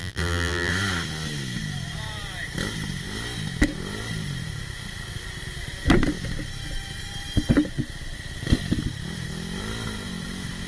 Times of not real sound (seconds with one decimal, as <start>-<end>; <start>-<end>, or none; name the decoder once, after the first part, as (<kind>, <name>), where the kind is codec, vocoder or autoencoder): 0.0-0.7 (vocoder, BigVGAN v2)